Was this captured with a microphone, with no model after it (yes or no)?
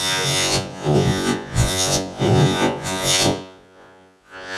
no